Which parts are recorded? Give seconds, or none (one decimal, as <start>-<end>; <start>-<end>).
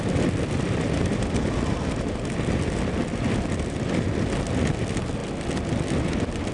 0.0-6.5